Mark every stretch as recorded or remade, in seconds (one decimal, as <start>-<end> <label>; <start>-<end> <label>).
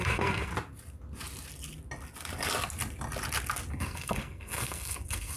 0.0-0.5 remade; 0.5-3.7 recorded; 3.7-5.4 remade